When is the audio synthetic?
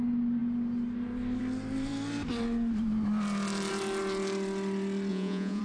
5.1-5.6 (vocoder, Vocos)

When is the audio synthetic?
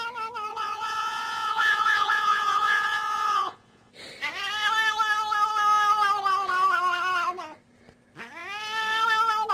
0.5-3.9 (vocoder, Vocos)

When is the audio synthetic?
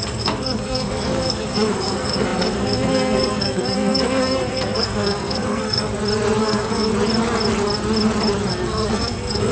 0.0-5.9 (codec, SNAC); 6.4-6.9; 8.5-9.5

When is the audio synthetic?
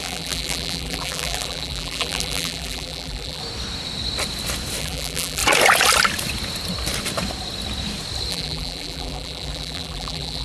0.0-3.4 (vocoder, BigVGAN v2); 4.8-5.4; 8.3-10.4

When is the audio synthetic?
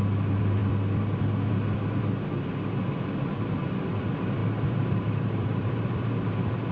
4.4-6.7 (vocoder, BigVGAN v2)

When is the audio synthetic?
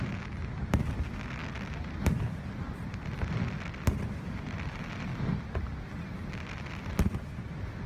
none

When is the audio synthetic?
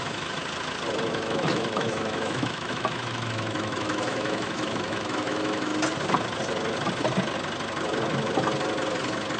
0.0-0.4 (autoencoder, DAC-VAE); 1.1-5.7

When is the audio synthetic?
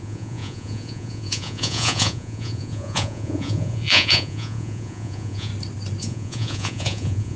0.0-5.5 (vocoder, Vocos); 6.0-7.4